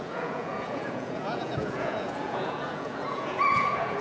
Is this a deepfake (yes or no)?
yes